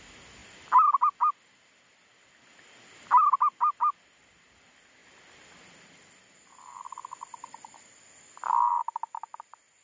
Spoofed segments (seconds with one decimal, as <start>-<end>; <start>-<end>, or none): none